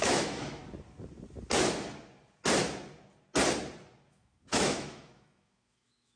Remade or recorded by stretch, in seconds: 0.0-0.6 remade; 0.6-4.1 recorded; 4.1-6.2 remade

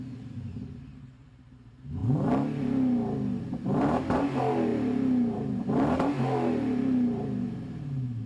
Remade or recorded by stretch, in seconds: 0.0-2.0 remade; 2.0-3.4 recorded; 3.4-8.3 remade